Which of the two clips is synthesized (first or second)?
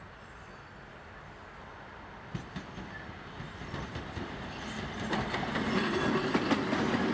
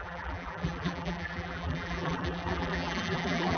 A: second